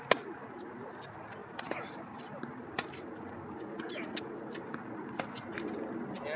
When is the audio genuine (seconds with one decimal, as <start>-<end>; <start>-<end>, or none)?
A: 0.0-1.4; 5.2-6.4